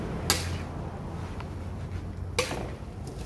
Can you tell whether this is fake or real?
real